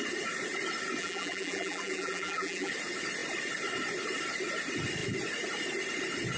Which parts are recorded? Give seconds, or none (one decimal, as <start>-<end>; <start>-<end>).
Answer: 0.0-1.0; 2.7-6.4

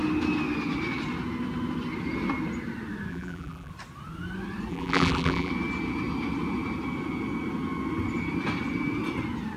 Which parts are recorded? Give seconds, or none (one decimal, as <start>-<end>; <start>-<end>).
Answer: 0.0-3.1; 3.7-4.7; 5.5-9.6

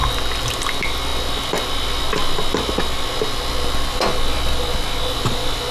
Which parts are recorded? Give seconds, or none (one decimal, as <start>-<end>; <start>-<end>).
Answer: 0.0-5.7

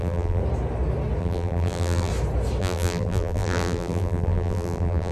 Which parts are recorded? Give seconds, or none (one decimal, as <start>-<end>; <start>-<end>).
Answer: 0.4-1.2; 2.1-2.6